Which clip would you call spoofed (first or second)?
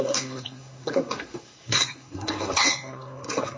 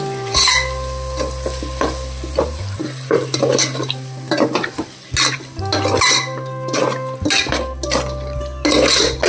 first